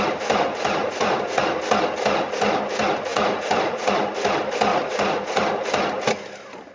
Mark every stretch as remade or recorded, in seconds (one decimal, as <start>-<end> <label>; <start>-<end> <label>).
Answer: 0.0-0.8 recorded; 0.8-1.4 remade; 1.4-3.1 recorded; 3.1-3.9 remade; 3.9-4.7 recorded; 4.7-5.5 remade; 5.5-6.7 recorded